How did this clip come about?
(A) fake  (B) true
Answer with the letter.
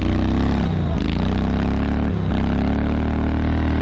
B